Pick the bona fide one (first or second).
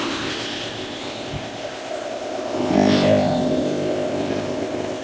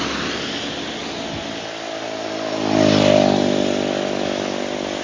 second